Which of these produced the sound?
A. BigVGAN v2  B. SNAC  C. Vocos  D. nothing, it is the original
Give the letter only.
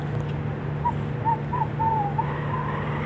A